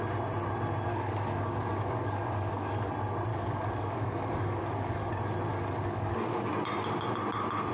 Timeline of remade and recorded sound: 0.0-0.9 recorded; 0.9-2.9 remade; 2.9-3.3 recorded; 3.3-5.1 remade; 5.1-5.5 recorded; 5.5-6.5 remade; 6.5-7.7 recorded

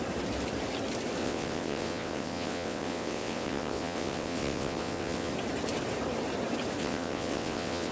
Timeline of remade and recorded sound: 0.0-1.2 recorded; 1.2-5.3 remade; 5.3-6.8 recorded; 6.8-7.9 remade